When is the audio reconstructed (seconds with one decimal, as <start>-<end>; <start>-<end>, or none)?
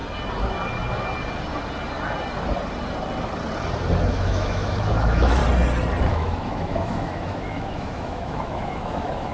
4.1-5.4; 6.0-9.3